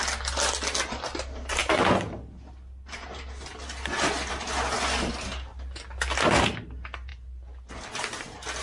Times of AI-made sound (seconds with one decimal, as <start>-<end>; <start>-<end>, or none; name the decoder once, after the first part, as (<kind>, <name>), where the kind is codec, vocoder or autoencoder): none